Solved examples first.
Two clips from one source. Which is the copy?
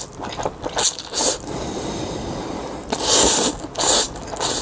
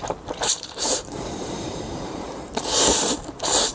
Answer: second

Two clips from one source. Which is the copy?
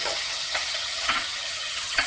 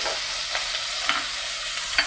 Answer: first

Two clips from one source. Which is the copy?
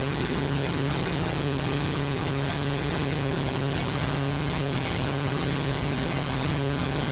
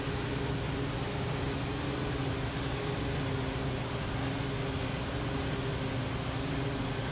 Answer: first